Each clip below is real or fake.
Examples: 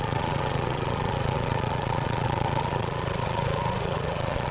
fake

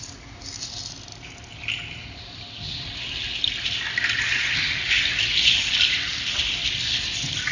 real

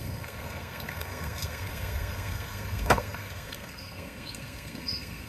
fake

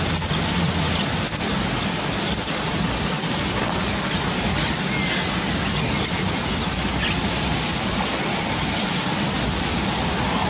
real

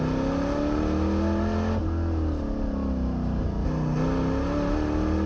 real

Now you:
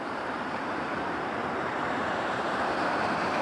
fake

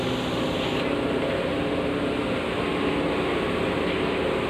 real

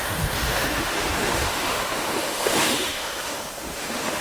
fake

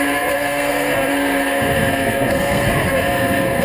fake